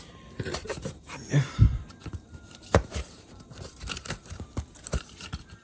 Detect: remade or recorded remade